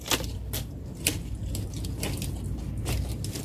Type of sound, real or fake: real